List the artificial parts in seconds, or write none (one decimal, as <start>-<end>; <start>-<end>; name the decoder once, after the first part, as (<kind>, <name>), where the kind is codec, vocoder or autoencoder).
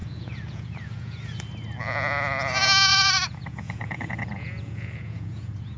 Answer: 0.0-1.4 (vocoder, Vocos); 2.9-5.8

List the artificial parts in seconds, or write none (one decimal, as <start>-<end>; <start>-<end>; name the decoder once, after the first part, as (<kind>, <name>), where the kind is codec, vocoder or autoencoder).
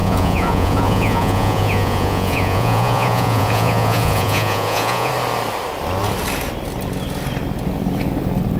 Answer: 0.0-5.1 (vocoder, Vocos)